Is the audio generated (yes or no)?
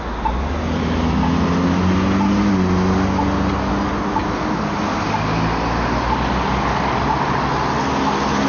no